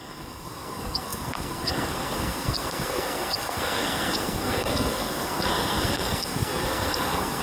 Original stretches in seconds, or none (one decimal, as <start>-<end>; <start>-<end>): none